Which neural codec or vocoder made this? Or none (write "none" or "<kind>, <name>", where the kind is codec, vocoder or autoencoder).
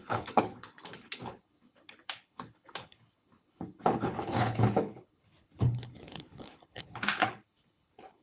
codec, HILCodec